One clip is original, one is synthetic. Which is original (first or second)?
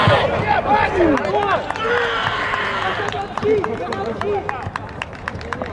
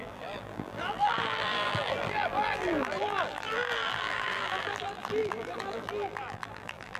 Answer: first